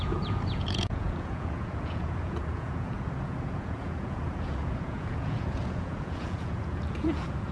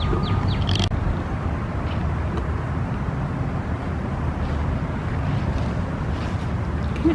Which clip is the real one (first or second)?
second